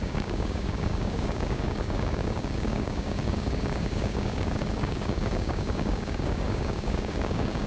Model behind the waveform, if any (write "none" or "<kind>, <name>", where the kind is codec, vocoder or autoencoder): codec, DAC